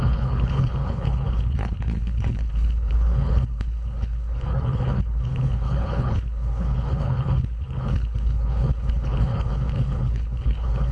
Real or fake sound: fake